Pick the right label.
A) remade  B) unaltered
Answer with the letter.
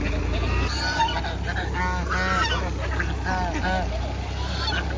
B